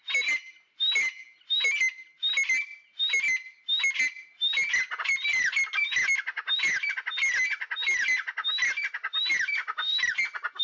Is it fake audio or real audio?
real